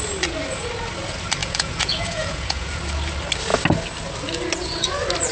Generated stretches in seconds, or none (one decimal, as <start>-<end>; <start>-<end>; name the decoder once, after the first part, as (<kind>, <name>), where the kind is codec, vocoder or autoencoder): 1.4-2.8 (vocoder, Vocos)